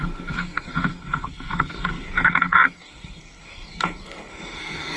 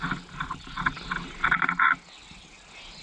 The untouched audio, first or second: second